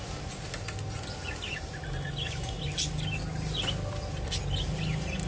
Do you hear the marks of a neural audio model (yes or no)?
no